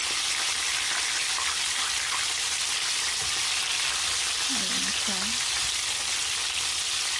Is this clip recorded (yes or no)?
yes